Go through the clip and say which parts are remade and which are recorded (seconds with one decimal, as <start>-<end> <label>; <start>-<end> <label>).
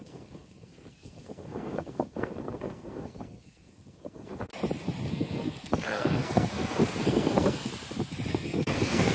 0.0-4.5 remade; 4.5-5.1 recorded; 5.1-7.7 remade; 7.7-8.3 recorded; 8.3-9.1 remade